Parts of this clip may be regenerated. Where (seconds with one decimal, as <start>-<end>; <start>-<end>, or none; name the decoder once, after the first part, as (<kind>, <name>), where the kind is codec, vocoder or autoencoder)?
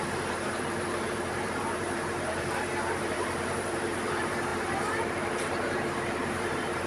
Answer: 0.0-6.9 (vocoder, BigVGAN v2)